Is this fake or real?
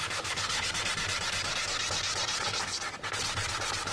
real